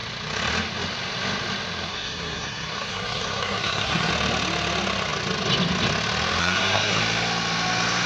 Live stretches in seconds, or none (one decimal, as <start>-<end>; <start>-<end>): 0.0-1.9; 4.1-6.4; 7.0-8.1